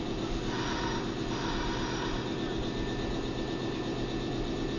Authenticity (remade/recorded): recorded